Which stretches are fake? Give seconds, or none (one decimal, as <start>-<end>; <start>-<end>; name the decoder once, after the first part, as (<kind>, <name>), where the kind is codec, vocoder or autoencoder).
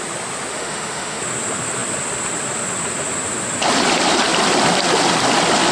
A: 0.5-1.2 (autoencoder, DAC-VAE)